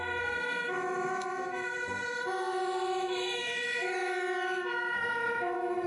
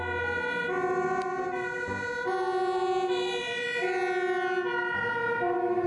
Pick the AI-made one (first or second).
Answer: first